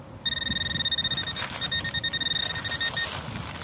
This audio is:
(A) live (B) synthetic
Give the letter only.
A